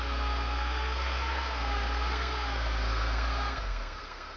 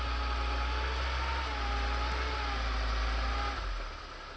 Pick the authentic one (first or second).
second